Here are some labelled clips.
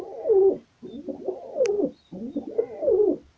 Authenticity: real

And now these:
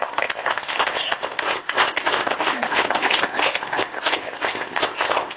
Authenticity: fake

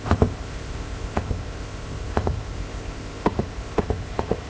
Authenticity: fake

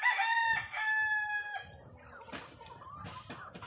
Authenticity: real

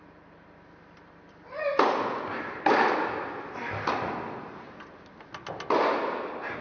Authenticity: real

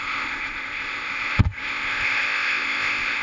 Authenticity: fake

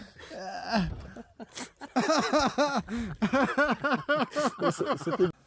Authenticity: real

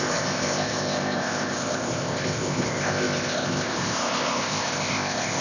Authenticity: fake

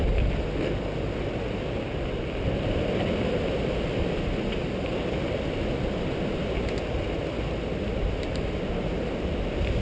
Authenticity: real